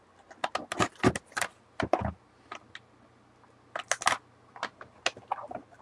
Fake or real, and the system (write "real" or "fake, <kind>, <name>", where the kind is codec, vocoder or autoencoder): real